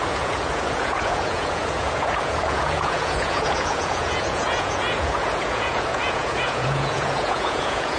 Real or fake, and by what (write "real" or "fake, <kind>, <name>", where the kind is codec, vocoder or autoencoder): fake, vocoder, Vocos